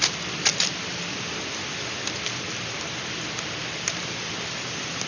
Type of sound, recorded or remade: recorded